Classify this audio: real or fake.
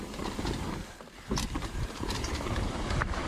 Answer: fake